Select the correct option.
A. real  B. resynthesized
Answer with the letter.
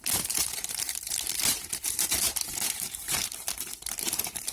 B